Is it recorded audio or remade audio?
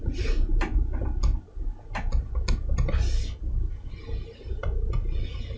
recorded